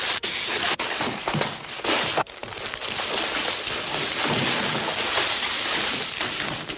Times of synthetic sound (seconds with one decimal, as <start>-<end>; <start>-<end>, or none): none